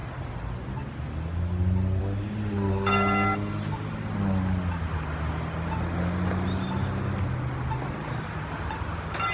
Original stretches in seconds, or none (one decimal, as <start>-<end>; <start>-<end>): 0.0-9.3